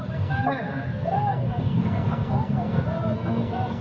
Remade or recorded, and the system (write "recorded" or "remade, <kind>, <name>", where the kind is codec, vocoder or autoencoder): remade, codec, SNAC